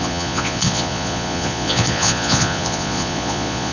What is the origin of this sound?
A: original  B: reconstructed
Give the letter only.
B